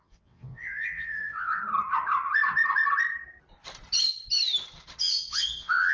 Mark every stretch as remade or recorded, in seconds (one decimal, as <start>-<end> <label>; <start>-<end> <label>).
0.0-1.6 remade; 1.6-5.0 recorded; 5.0-5.9 remade

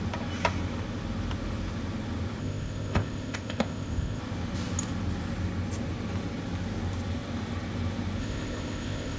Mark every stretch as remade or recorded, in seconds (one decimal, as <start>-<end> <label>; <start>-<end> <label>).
0.0-2.4 recorded; 2.4-4.2 remade; 4.2-8.2 recorded; 8.2-9.2 remade

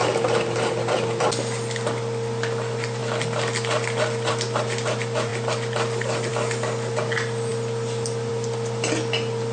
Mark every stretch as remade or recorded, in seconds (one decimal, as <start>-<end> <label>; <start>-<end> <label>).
0.0-9.5 recorded

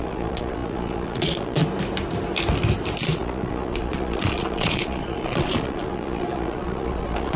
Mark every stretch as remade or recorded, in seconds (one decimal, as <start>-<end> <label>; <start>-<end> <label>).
0.0-1.6 remade; 1.6-3.0 recorded; 3.0-7.4 remade

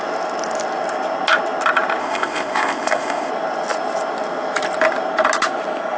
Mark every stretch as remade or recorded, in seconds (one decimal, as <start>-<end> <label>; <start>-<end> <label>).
0.0-2.0 recorded; 2.0-3.3 remade; 3.3-6.0 recorded

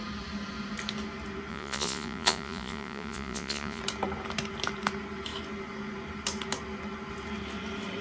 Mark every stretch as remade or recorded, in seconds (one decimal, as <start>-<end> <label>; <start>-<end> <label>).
0.0-1.5 recorded; 1.5-3.8 remade; 3.8-8.0 recorded